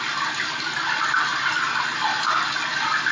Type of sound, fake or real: real